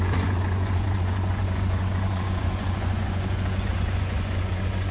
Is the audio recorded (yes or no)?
no